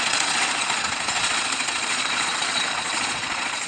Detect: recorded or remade remade